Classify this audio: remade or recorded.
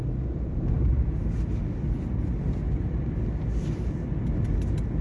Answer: recorded